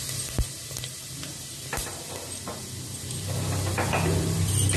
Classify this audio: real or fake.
real